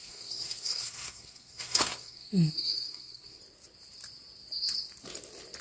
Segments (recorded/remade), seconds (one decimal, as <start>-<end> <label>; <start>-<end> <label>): 0.0-3.4 remade; 3.4-5.6 recorded